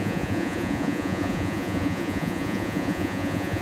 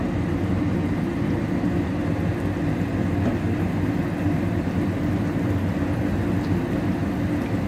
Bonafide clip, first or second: second